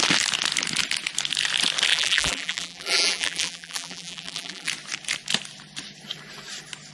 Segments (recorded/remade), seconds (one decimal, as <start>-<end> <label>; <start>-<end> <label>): 0.0-1.9 recorded; 1.9-4.7 remade; 4.7-6.9 recorded